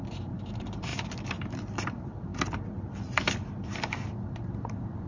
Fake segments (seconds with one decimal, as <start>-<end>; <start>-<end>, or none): 0.0-0.9; 1.4-2.3; 3.9-5.1